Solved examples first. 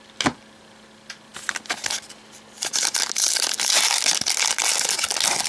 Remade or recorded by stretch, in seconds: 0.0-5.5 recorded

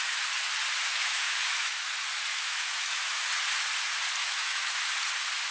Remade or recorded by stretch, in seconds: 0.0-0.9 recorded; 0.9-1.9 remade; 1.9-2.3 recorded; 2.3-3.2 remade; 3.2-4.2 recorded; 4.2-4.9 remade; 4.9-5.5 recorded

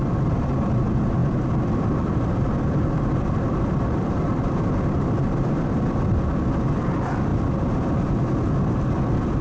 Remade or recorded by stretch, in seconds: 0.0-1.2 recorded; 1.2-4.5 remade; 4.5-9.4 recorded